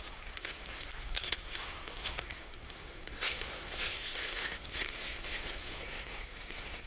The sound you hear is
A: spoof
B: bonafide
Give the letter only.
A